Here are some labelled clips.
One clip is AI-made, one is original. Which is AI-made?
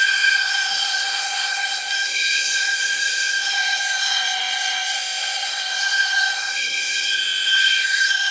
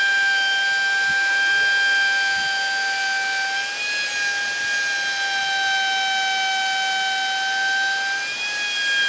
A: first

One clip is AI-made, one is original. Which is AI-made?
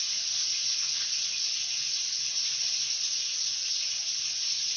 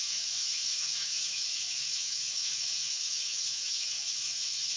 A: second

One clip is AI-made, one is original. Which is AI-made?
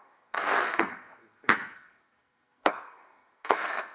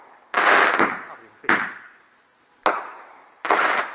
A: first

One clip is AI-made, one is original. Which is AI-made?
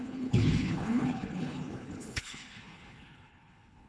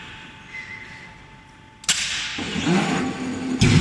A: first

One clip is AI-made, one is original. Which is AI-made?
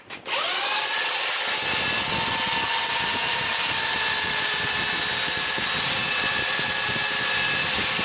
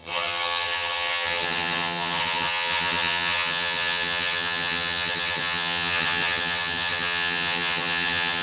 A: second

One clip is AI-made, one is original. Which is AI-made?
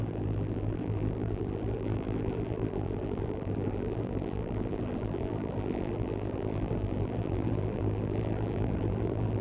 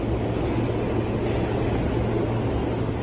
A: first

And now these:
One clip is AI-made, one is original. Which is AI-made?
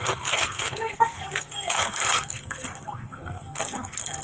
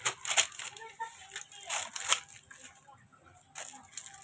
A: first